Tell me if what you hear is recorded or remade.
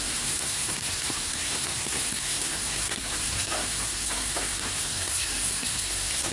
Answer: remade